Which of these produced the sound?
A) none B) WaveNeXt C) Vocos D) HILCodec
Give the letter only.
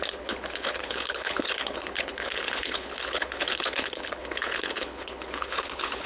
D